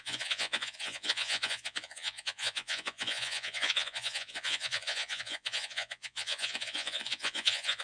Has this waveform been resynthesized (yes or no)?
yes